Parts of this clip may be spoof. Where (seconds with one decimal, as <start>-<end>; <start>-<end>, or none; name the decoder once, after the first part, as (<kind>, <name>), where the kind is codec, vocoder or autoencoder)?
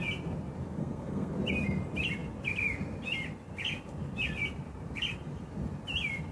0.8-1.3 (codec, SNAC)